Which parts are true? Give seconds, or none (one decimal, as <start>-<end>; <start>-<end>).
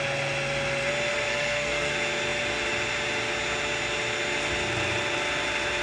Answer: 0.0-1.3; 1.9-5.8